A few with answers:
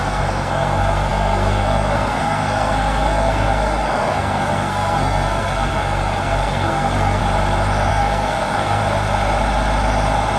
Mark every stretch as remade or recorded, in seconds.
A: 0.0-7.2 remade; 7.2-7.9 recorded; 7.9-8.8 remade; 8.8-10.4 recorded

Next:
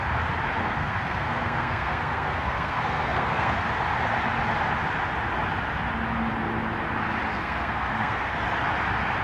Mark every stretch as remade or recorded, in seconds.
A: 0.0-0.6 recorded; 0.6-3.6 remade; 3.6-7.3 recorded; 7.3-8.3 remade; 8.3-9.2 recorded

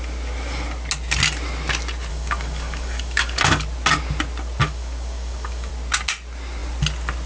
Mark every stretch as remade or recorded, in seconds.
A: 0.0-2.1 recorded; 2.1-3.4 remade; 3.4-4.6 recorded; 4.6-5.7 remade; 5.7-7.3 recorded

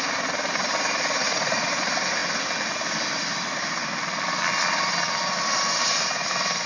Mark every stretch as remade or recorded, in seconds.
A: 0.0-1.2 recorded; 1.2-1.8 remade; 1.8-6.7 recorded

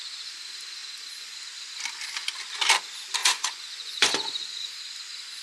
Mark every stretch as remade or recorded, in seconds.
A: 0.0-3.2 recorded; 3.2-4.8 remade; 4.8-5.4 recorded

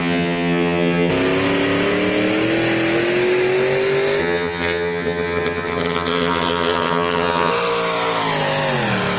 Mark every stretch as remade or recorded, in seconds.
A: 0.0-1.1 remade; 1.1-4.2 recorded; 4.2-7.5 remade; 7.5-9.2 recorded